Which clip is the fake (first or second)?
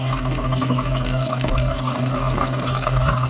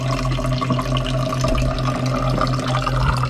first